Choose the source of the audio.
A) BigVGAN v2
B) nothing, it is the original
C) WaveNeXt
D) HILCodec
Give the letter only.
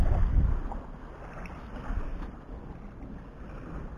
B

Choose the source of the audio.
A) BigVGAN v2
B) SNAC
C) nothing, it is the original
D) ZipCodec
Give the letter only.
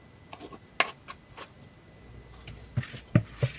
C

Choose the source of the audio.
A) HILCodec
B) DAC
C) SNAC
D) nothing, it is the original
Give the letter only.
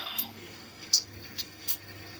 C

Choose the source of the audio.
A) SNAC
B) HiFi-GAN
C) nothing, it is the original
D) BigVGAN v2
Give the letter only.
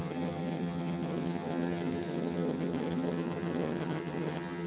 B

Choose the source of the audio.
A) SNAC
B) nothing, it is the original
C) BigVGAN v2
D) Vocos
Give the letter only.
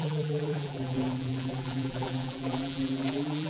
C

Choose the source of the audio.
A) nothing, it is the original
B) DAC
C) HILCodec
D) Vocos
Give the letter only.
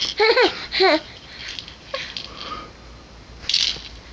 A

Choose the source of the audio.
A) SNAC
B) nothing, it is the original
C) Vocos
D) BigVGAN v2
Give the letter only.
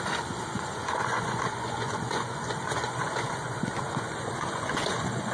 C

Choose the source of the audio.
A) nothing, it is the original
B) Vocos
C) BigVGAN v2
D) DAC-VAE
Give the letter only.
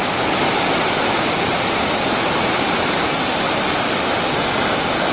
A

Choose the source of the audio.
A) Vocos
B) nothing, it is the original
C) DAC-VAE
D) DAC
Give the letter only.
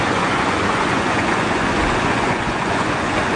A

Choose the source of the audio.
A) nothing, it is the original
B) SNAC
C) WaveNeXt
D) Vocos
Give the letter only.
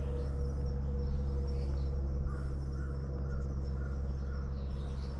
A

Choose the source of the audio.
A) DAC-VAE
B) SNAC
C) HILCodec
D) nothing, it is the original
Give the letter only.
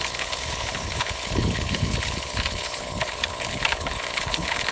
C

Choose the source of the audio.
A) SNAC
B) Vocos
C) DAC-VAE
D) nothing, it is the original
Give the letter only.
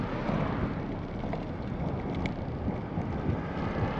D